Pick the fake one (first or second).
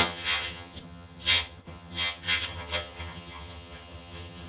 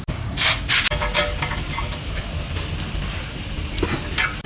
first